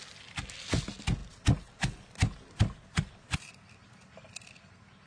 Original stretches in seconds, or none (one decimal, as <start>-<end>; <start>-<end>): 0.0-5.1